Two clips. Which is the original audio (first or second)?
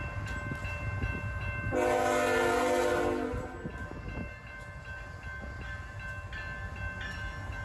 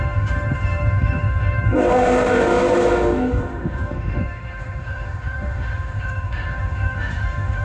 first